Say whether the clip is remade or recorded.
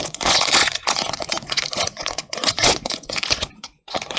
remade